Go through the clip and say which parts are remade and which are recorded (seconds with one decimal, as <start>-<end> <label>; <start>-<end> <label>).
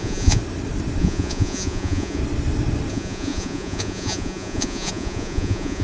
0.0-0.4 remade; 0.4-1.0 recorded; 1.0-2.2 remade; 2.2-2.9 recorded; 2.9-5.8 remade